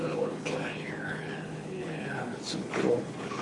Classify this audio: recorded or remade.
remade